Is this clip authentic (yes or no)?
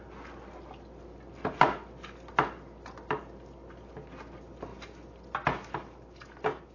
yes